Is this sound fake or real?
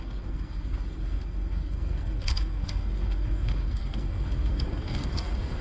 fake